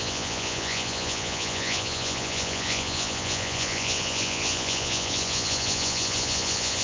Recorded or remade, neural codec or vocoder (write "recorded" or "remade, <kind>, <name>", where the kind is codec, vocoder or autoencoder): remade, vocoder, Vocos